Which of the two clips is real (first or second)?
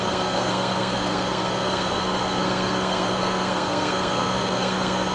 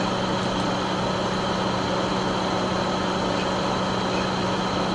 second